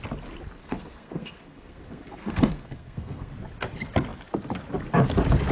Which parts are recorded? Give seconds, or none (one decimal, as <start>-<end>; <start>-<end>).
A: 0.0-0.6; 3.3-5.5